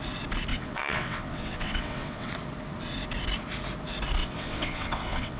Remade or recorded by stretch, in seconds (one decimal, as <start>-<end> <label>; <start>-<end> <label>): 0.0-0.5 recorded; 0.5-2.3 remade; 2.3-4.2 recorded; 4.2-5.4 remade